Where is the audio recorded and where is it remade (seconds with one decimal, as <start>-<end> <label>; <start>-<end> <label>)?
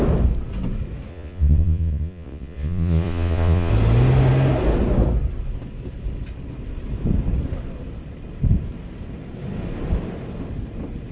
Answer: 0.0-1.1 recorded; 1.1-3.7 remade; 3.7-11.1 recorded